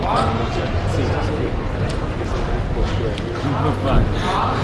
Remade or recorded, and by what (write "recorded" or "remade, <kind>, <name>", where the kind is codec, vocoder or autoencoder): recorded